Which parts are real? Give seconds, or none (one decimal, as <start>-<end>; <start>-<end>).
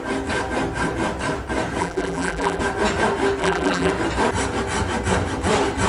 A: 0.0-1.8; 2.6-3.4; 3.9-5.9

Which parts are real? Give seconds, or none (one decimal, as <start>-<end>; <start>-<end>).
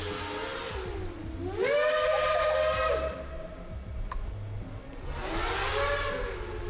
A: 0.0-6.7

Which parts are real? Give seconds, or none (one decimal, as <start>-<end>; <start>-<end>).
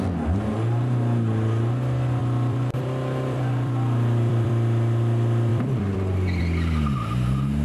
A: 0.0-2.2; 4.5-5.5; 6.4-7.6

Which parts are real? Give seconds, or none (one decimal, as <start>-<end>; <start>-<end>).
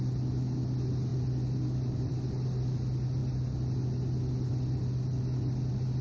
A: 0.0-6.0